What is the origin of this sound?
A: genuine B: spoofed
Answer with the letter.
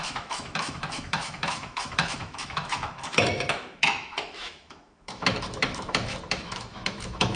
B